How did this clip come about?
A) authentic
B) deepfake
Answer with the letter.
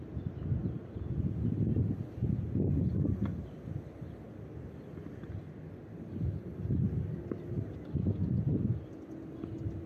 A